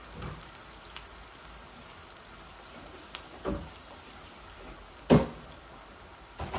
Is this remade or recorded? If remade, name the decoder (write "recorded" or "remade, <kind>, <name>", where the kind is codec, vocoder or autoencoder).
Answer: recorded